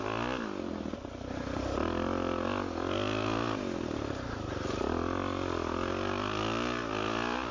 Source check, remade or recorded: recorded